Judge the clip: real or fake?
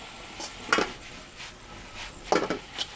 real